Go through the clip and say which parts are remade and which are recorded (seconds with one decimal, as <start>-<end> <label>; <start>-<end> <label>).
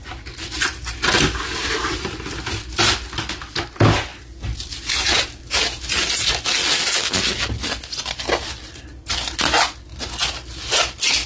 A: 0.0-11.3 recorded